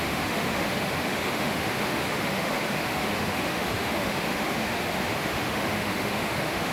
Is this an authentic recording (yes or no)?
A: no